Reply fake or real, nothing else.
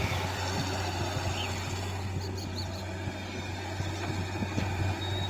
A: real